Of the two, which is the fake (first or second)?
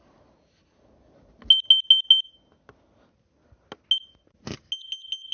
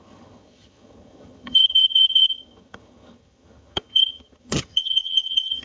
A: second